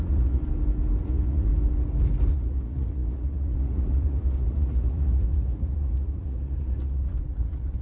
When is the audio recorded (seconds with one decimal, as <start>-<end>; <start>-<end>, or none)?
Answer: 0.4-1.0; 1.5-2.3